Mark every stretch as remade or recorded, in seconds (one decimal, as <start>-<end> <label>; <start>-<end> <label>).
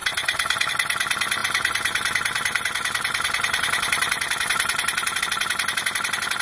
0.0-0.7 remade; 0.7-1.4 recorded; 1.4-5.2 remade; 5.2-6.4 recorded